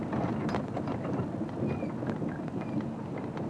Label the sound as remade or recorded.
recorded